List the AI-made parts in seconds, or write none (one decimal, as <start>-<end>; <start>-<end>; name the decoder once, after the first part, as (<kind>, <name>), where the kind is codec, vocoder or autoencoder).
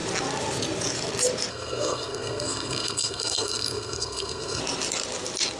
1.5-4.6 (codec, SNAC)